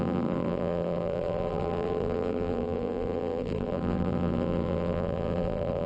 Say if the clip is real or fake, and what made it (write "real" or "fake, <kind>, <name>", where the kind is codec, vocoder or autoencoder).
fake, vocoder, BigVGAN v2